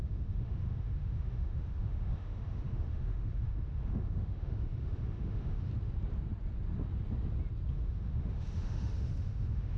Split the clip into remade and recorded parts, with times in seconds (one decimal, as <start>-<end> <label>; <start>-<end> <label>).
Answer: 0.0-5.7 remade; 5.7-7.7 recorded; 7.7-9.8 remade